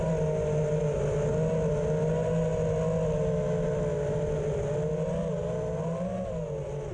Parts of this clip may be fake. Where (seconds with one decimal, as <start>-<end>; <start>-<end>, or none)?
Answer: none